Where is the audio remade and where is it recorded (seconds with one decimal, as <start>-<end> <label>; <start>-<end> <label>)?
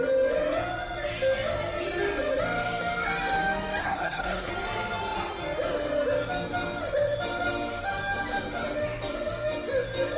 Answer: 0.0-3.8 recorded; 3.8-4.5 remade; 4.5-10.2 recorded